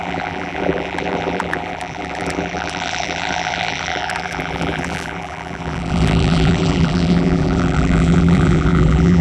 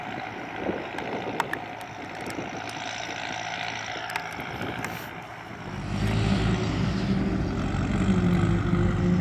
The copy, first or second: first